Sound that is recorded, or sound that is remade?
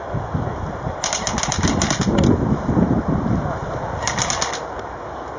recorded